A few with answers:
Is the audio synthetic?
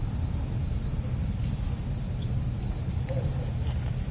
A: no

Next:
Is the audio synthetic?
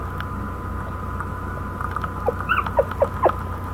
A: no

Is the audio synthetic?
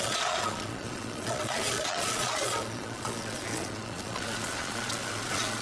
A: yes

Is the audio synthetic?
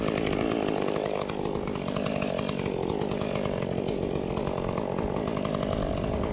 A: no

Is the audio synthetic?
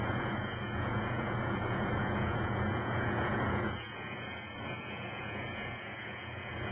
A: yes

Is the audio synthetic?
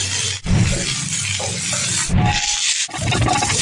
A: no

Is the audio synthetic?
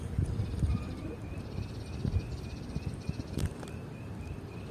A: no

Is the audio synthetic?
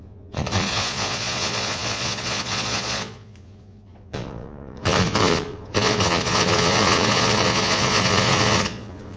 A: yes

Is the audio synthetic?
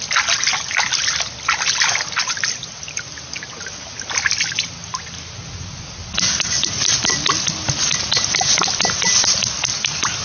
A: no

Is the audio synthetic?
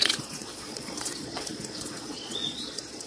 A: yes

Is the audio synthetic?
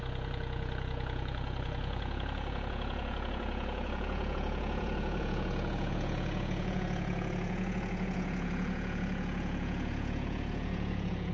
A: yes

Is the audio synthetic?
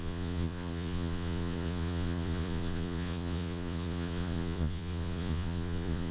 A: yes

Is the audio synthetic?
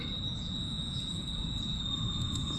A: yes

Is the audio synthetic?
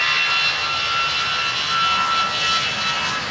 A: no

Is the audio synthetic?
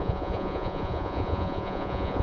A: yes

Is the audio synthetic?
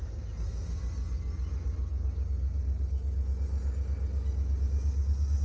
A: no